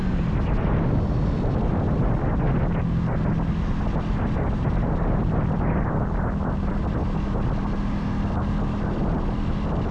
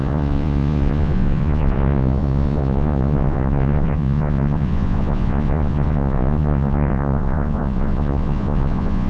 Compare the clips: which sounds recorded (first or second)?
first